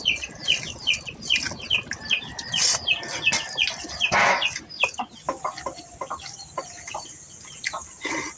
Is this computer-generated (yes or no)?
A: no